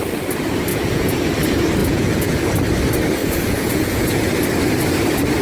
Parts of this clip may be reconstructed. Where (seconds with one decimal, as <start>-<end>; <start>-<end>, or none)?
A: 0.7-1.2; 1.8-2.5; 3.2-4.3